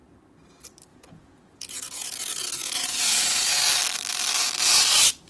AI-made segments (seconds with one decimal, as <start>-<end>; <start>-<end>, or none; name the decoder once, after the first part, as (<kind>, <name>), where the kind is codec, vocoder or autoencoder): 0.9-3.6 (vocoder, Vocos)